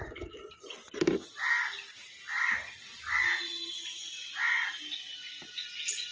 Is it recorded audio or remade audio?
recorded